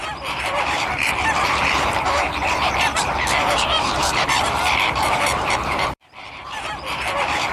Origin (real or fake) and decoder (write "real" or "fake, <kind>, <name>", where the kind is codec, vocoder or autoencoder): fake, vocoder, BigVGAN v2